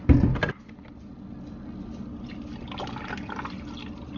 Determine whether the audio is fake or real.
real